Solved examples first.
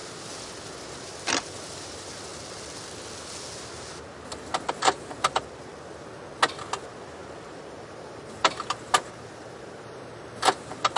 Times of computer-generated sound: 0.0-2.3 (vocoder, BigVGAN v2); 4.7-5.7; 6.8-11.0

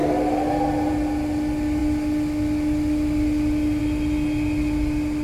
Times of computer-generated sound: none

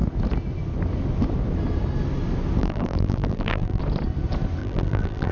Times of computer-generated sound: 2.6-3.8 (vocoder, BigVGAN v2); 4.6-5.3

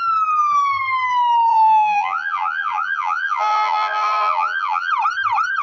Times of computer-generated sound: 1.5-4.9 (vocoder, BigVGAN v2)

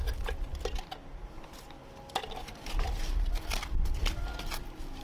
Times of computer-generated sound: none

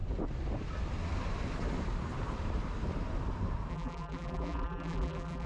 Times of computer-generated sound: 3.7-5.5 (vocoder, BigVGAN v2)

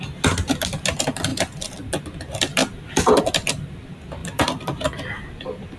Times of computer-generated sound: 2.6-3.2 (vocoder, BigVGAN v2); 4.2-5.8